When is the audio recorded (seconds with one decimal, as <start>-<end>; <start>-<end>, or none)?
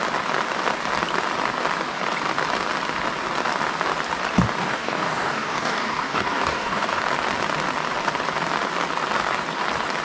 0.0-4.6; 7.0-10.0